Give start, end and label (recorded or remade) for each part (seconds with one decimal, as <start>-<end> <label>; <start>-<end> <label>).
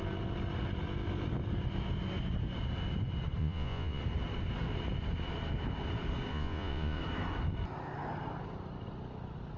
0.0-3.4 recorded; 3.4-4.0 remade; 4.0-6.3 recorded; 6.3-7.0 remade; 7.0-9.6 recorded